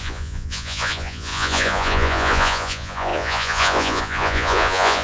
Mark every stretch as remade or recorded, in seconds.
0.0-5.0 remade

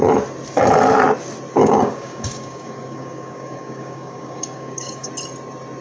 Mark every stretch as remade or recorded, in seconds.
0.0-1.6 recorded; 1.6-5.1 remade; 5.1-5.8 recorded

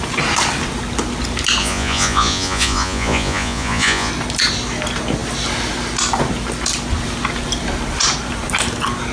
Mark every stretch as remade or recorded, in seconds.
0.0-1.6 recorded; 1.6-4.1 remade; 4.1-9.1 recorded

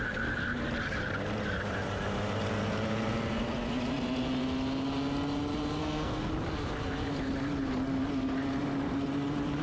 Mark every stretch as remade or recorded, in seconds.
0.0-5.8 recorded; 5.8-6.3 remade; 6.3-9.6 recorded

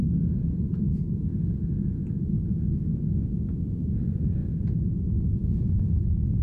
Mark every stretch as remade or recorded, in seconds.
0.0-4.4 recorded; 4.4-4.9 remade; 4.9-5.4 recorded; 5.4-6.4 remade

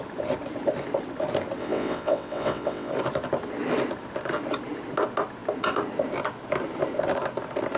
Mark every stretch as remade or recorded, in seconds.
0.0-1.6 recorded; 1.6-2.9 remade; 2.9-7.8 recorded